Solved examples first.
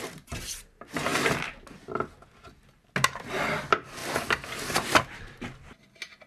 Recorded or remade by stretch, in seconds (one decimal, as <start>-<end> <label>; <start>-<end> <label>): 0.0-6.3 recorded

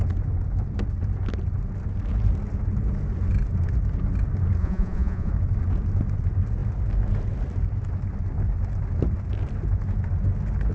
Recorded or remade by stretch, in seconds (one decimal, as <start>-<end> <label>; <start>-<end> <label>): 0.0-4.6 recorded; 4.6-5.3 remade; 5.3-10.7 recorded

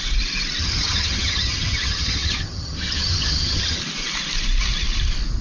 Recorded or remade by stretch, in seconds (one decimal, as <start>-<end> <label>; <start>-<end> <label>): 0.0-0.6 recorded; 0.6-3.8 remade; 3.8-5.4 recorded

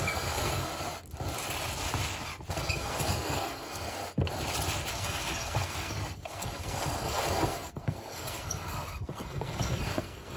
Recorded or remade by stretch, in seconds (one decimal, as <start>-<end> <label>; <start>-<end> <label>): 0.0-0.7 remade; 0.7-2.5 recorded; 2.5-4.0 remade; 4.0-4.9 recorded; 4.9-10.4 remade

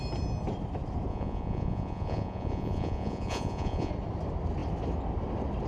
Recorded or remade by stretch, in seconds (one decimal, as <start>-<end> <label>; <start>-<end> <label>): 0.0-1.1 recorded; 1.1-3.9 remade; 3.9-5.7 recorded

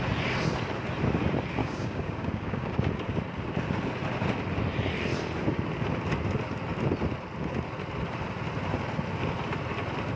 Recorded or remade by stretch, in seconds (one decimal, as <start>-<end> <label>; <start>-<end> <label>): 0.0-1.6 recorded; 1.6-2.9 remade; 2.9-10.2 recorded

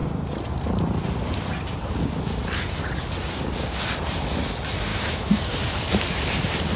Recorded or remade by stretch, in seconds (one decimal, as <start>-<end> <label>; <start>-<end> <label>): 0.0-4.9 recorded; 4.9-5.4 remade; 5.4-6.8 recorded

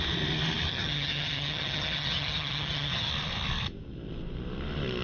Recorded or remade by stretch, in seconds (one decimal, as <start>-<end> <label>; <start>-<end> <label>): 0.0-0.7 recorded; 0.7-3.1 remade; 3.1-5.0 recorded